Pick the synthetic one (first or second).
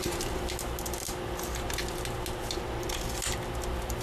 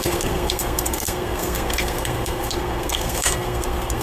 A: second